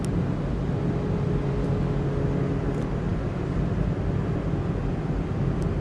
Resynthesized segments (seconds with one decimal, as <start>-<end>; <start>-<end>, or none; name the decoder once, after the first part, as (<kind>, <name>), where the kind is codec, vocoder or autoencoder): none